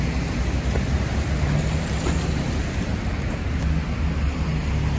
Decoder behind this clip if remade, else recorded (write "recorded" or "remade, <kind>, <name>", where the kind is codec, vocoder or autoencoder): recorded